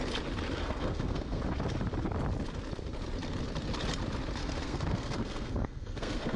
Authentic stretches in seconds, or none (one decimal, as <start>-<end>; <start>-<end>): 0.0-0.6; 1.4-4.4